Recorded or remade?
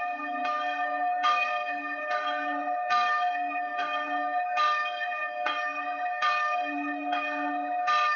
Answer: remade